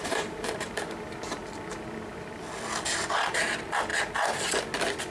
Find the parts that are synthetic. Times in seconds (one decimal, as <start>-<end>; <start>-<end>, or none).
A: 0.0-0.8

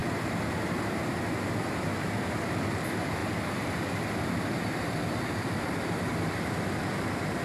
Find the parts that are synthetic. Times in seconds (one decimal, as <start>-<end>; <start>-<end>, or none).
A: 0.0-7.4

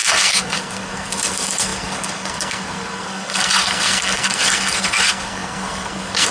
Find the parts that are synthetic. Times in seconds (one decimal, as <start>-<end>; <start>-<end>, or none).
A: 0.0-6.3

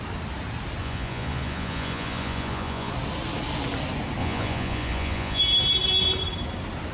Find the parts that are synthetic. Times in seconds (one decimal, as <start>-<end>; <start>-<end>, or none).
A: 0.8-2.9; 4.2-5.4

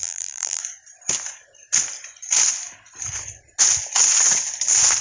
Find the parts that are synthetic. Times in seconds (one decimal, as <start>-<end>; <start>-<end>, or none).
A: 0.0-0.6

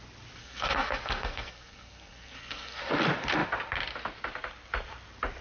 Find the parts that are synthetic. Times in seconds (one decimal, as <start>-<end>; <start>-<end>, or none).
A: 0.4-2.8

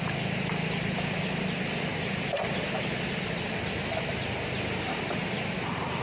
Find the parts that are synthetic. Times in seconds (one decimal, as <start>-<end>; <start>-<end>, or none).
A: none

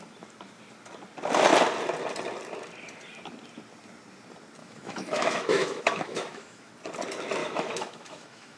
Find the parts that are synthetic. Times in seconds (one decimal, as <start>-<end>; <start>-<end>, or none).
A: 4.6-6.7; 7.4-8.6